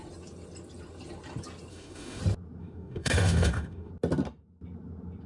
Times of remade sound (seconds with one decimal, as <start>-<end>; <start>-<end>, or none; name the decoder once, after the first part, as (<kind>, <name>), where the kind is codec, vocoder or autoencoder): 1.7-2.2 (autoencoder, DAC-VAE); 2.6-3.9